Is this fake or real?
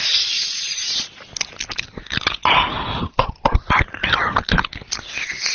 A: real